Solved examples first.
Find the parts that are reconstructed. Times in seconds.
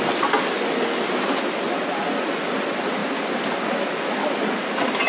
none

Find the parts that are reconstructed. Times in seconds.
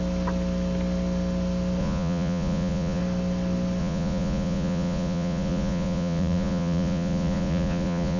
1.8-3.0 (vocoder, Vocos); 3.8-8.2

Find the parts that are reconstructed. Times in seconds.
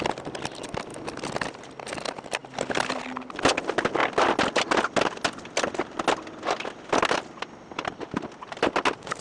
none